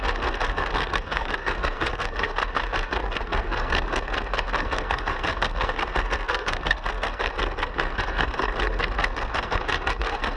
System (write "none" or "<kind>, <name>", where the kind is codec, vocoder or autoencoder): codec, SNAC